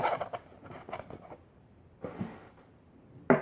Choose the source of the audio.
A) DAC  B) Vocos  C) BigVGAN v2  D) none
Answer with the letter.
D